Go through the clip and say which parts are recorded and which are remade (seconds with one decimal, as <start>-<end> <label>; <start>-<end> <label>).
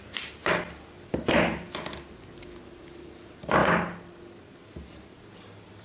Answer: 0.0-5.8 recorded